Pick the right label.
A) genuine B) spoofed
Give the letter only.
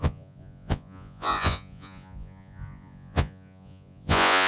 B